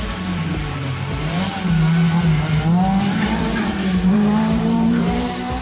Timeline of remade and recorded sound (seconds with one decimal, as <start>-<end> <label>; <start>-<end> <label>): 0.0-1.5 remade; 1.5-4.1 recorded; 4.1-5.6 remade